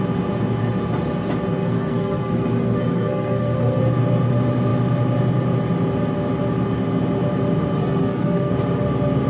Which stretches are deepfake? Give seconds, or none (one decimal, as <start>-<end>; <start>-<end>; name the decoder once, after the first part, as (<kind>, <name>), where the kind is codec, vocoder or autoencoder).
1.6-3.8 (codec, SNAC); 7.8-8.5